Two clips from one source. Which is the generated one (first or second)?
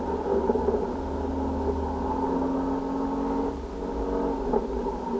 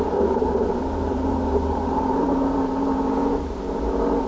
second